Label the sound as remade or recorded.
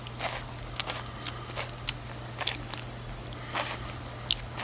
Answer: recorded